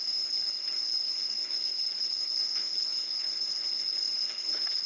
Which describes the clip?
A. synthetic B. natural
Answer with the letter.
A